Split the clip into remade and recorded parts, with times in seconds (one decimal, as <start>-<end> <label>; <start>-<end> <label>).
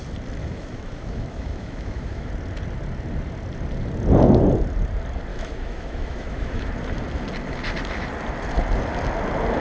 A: 0.0-0.4 recorded; 0.4-2.3 remade; 2.3-5.3 recorded; 5.3-6.7 remade; 6.7-9.6 recorded